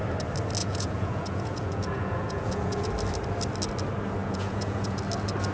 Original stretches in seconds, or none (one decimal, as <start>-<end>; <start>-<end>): 0.0-0.6; 2.9-4.2; 5.0-5.5